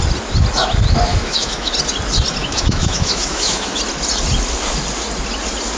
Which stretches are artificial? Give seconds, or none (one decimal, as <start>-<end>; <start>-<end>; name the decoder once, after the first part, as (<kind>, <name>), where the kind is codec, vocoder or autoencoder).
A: 1.1-1.7 (autoencoder, DAC-VAE); 2.4-3.8